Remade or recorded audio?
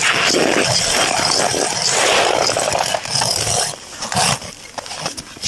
recorded